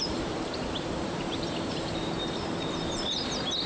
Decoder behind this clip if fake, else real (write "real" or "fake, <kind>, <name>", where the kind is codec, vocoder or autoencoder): fake, vocoder, BigVGAN v2